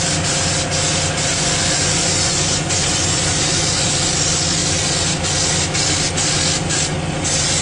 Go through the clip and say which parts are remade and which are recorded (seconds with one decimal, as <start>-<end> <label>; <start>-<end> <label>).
0.0-1.3 recorded; 1.3-4.1 remade; 4.1-7.6 recorded